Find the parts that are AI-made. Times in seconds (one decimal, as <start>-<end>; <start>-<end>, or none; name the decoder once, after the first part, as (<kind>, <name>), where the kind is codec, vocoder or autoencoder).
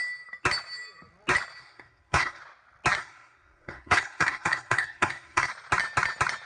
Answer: 1.6-2.4 (codec, SNAC); 3.0-5.5